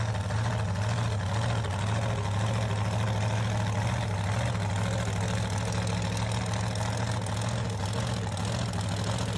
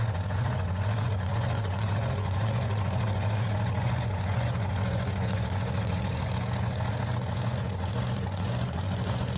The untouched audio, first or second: first